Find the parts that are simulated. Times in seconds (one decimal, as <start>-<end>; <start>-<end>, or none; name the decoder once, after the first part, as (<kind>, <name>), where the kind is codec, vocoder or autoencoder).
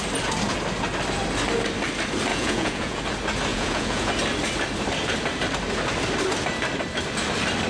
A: 2.3-3.0 (vocoder, Vocos); 3.5-4.1